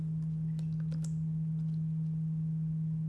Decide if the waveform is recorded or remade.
recorded